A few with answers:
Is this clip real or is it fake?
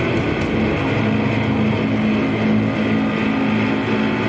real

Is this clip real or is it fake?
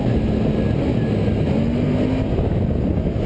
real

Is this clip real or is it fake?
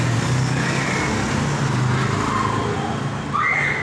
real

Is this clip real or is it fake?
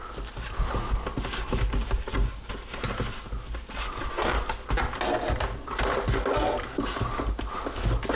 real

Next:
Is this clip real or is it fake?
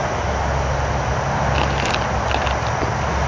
real